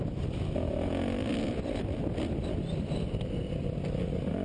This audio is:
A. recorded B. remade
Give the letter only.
A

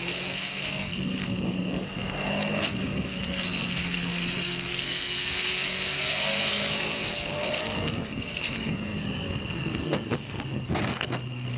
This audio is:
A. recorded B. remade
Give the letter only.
B